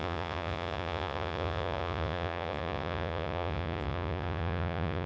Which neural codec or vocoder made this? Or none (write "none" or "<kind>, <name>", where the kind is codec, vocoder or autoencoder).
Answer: vocoder, Vocos